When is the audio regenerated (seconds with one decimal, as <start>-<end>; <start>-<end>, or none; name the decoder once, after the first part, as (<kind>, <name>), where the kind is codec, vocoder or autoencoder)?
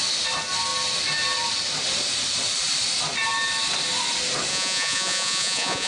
4.5-5.9 (vocoder, Vocos)